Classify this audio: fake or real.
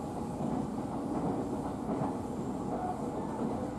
real